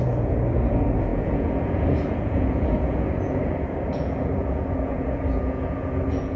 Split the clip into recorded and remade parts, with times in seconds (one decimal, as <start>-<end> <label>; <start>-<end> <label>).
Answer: 0.0-6.4 remade